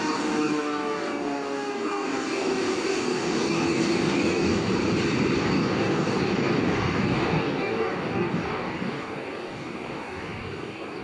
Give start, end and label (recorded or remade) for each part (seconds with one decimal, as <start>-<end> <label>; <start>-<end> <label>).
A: 0.0-4.7 remade; 4.7-5.4 recorded; 5.4-11.0 remade